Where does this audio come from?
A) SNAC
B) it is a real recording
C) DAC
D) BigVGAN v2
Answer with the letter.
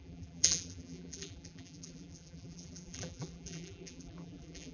D